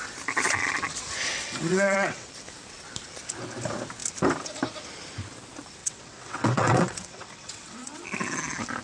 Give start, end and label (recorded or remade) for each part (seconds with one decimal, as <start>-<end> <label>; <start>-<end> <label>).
0.0-1.7 recorded; 1.7-2.3 remade; 2.3-5.8 recorded; 5.8-8.0 remade; 8.0-8.8 recorded